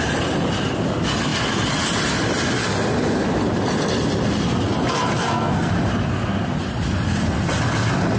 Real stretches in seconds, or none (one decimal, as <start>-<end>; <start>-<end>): 0.0-5.2; 5.7-8.2